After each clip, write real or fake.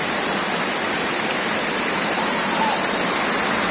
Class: fake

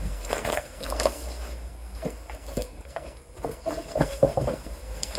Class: fake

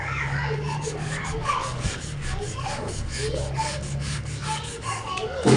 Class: fake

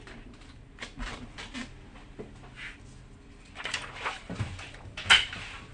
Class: real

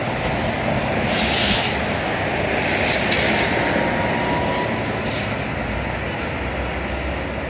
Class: real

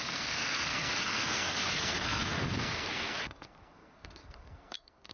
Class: fake